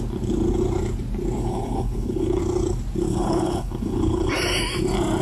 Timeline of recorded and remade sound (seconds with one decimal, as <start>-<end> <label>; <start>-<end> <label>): 0.0-1.4 recorded; 1.4-2.4 remade; 2.4-3.1 recorded; 3.1-4.3 remade; 4.3-5.2 recorded